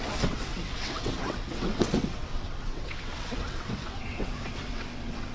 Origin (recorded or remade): remade